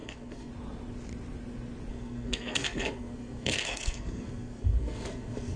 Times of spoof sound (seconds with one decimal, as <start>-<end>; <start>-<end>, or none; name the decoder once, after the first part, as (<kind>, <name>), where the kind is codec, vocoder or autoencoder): 0.0-0.5 (codec, SNAC); 1.9-5.6